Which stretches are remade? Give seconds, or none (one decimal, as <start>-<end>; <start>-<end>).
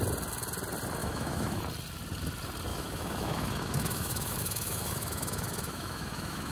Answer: 1.0-1.6; 2.7-6.5